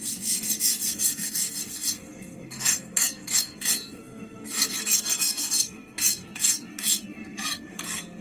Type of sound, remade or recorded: remade